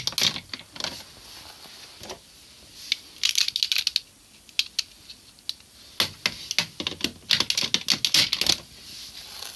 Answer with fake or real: real